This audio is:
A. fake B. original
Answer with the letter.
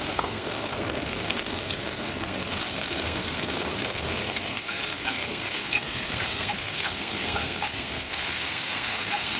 A